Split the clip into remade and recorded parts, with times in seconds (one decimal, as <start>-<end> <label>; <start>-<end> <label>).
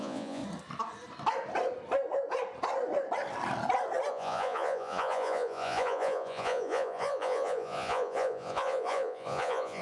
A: 0.0-0.4 remade; 0.4-4.1 recorded; 4.1-9.8 remade